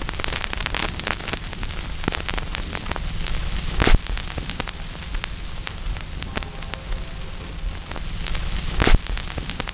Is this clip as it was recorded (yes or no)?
yes